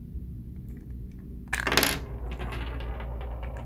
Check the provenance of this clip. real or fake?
real